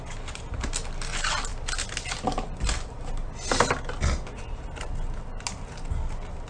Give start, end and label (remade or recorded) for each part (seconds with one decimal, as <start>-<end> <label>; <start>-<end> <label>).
0.0-6.5 recorded